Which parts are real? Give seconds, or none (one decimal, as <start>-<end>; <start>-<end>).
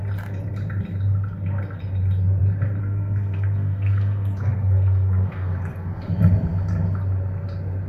0.0-2.8; 6.1-7.9